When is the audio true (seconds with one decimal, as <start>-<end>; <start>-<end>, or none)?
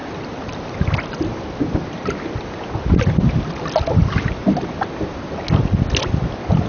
0.0-6.7